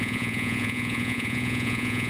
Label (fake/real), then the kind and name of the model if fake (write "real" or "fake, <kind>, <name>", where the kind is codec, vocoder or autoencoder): fake, vocoder, Vocos